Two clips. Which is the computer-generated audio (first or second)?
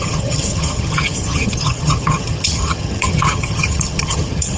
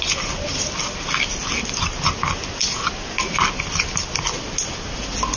first